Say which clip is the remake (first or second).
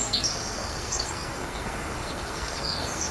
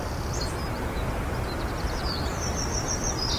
first